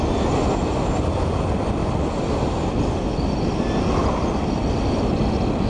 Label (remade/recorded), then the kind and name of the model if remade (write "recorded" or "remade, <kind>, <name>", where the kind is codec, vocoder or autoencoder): recorded